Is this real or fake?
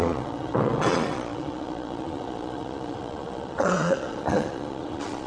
fake